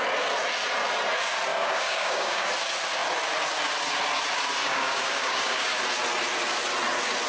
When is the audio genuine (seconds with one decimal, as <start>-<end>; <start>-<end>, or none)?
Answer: 0.0-1.5; 2.5-4.6; 5.8-7.3